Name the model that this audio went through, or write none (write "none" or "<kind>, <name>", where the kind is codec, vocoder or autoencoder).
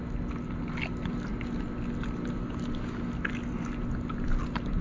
none